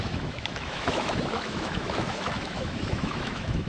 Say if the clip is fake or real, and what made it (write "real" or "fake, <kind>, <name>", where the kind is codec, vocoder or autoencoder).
fake, autoencoder, DAC-VAE